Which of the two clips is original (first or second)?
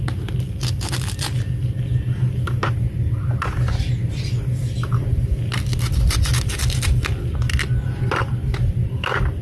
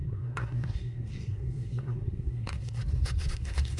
first